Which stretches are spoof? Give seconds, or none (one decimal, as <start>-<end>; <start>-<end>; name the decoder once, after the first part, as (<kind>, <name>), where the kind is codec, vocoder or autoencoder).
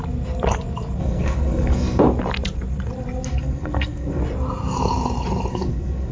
1.0-2.0 (codec, SNAC); 3.3-4.2; 5.5-6.1